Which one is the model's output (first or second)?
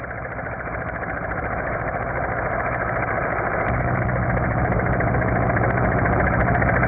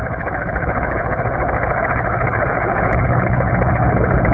second